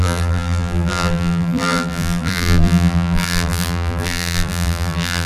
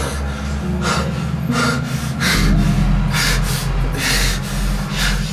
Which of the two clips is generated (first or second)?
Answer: first